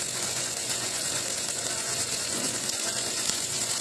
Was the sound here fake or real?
fake